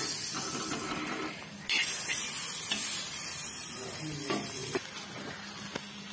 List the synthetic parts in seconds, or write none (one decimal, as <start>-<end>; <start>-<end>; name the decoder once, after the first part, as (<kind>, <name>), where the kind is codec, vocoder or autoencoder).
none